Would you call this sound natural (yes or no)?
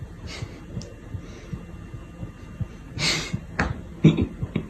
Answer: yes